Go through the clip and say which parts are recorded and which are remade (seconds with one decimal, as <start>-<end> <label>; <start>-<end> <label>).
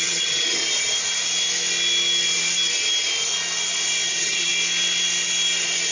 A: 0.0-0.6 remade; 0.6-4.1 recorded; 4.1-4.5 remade; 4.5-5.9 recorded